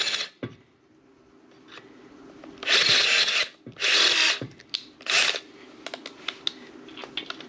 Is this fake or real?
real